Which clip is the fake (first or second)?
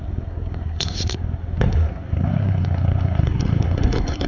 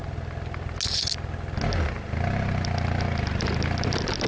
first